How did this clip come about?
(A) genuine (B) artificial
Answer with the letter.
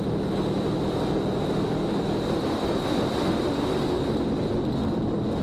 A